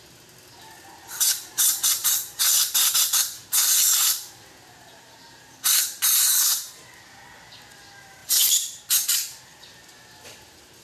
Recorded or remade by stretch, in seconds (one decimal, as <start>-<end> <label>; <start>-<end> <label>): 0.0-2.0 recorded; 2.0-6.8 remade; 6.8-10.8 recorded